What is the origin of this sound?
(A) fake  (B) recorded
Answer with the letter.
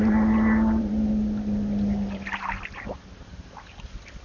B